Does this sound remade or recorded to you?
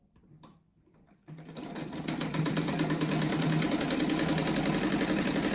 recorded